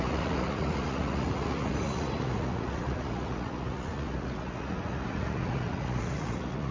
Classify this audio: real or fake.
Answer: fake